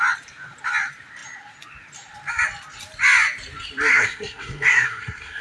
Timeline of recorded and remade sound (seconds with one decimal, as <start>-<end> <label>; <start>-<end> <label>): 0.0-3.9 recorded; 3.9-5.4 remade